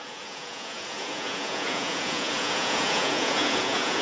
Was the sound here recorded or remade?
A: remade